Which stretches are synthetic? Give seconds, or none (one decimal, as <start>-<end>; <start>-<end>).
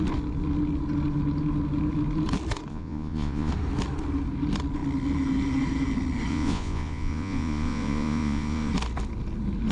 2.7-3.5; 6.3-8.7